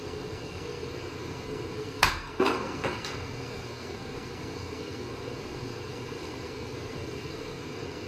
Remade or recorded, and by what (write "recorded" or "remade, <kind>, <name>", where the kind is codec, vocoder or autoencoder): remade, codec, SNAC